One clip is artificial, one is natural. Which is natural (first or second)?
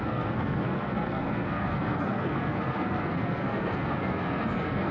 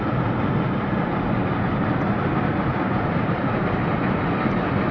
second